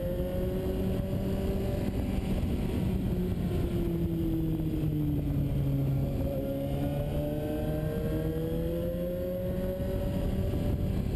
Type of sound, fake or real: real